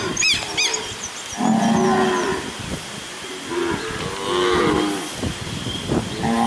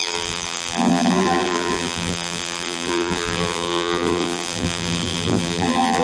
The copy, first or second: second